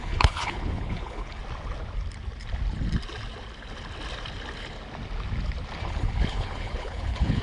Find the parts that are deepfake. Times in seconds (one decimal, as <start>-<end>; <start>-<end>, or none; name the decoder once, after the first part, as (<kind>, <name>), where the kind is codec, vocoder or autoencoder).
0.0-1.4 (codec, HILCodec); 5.8-7.4